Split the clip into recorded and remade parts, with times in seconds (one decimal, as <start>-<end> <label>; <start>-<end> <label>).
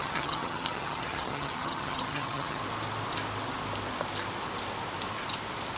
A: 0.0-2.6 remade; 2.6-5.8 recorded